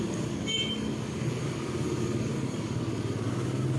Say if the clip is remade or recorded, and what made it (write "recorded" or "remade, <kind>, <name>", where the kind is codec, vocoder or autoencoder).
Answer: remade, codec, DAC